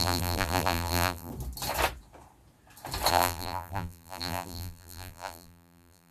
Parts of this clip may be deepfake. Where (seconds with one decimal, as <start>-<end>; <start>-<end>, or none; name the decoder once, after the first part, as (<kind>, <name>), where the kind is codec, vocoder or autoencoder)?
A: 0.0-1.3 (vocoder, BigVGAN v2); 3.1-6.1